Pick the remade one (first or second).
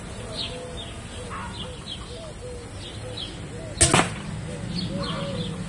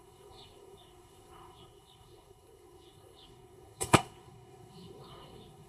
second